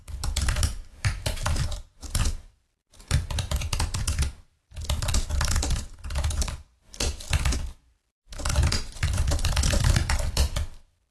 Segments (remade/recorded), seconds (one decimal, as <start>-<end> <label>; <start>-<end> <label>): 0.0-5.1 remade; 5.1-6.3 recorded; 6.3-11.1 remade